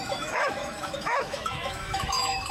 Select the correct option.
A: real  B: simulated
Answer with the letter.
B